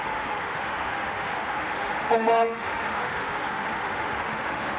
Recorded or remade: remade